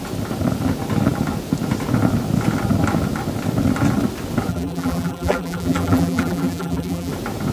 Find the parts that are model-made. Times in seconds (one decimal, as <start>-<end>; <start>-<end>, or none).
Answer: 4.5-7.1

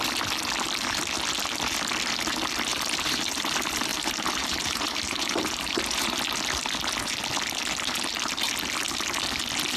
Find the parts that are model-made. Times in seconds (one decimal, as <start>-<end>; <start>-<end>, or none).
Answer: 2.7-3.5; 3.9-6.2